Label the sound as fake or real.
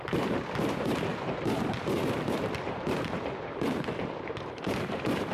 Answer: fake